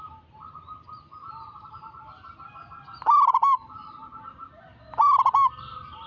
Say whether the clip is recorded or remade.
recorded